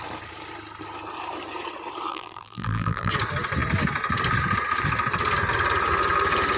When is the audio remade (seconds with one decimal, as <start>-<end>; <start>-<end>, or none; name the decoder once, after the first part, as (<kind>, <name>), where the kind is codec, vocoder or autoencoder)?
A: 2.1-3.1 (vocoder, BigVGAN v2)